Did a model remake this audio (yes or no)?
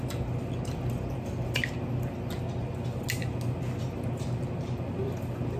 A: no